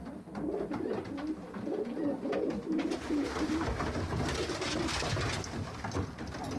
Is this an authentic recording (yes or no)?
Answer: yes